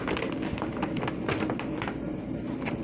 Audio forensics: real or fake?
real